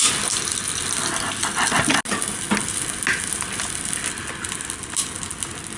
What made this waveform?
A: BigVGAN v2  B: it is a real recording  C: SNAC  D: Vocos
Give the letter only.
B